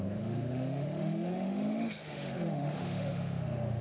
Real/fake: fake